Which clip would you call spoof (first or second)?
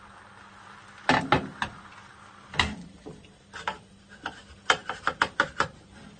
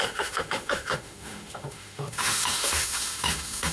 second